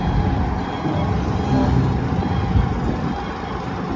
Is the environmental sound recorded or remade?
recorded